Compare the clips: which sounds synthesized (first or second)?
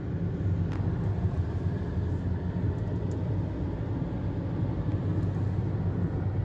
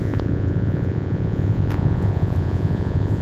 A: second